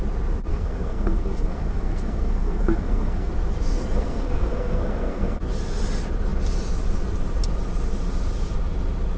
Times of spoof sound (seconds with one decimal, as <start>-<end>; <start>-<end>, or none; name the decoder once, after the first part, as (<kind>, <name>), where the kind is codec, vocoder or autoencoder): 0.5-3.3 (codec, SNAC); 3.9-5.4